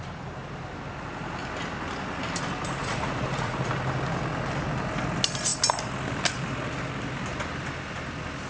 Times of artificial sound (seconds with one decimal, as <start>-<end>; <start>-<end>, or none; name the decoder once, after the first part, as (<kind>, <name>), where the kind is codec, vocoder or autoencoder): 2.8-3.7 (vocoder, Vocos)